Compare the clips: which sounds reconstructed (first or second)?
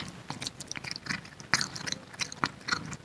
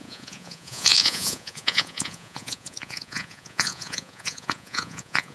second